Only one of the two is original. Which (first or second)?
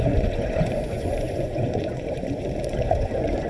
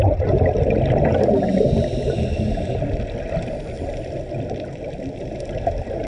second